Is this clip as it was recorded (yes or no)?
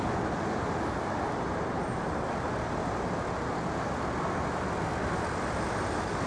yes